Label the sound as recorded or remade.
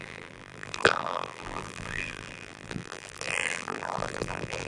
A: remade